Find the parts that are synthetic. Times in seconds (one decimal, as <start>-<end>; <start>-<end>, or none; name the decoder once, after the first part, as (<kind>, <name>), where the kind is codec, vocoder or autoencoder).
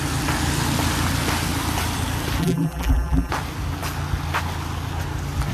2.4-3.3 (vocoder, BigVGAN v2)